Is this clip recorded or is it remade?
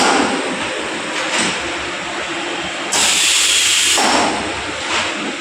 recorded